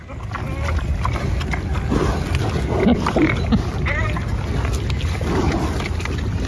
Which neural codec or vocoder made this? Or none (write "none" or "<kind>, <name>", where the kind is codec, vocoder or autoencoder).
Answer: none